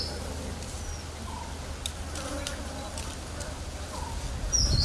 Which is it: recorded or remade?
recorded